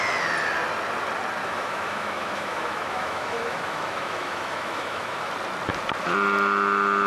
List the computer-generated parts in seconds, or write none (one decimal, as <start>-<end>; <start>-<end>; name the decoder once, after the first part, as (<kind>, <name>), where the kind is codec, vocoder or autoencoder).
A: 1.4-5.3 (autoencoder, DAC-VAE)